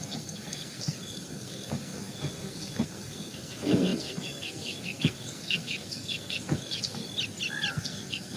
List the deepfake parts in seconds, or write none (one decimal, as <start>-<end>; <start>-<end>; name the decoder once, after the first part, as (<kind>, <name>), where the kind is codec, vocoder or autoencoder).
0.0-7.0 (codec, SNAC); 7.7-8.4